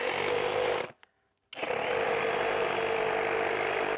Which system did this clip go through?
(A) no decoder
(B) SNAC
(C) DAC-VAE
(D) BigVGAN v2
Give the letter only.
A